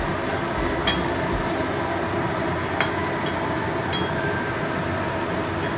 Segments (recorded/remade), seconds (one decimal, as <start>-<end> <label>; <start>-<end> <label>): 0.0-5.8 recorded